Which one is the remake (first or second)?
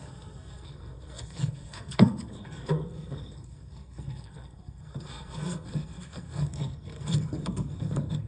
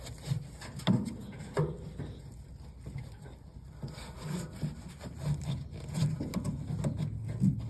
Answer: first